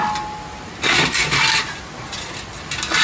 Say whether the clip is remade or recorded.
recorded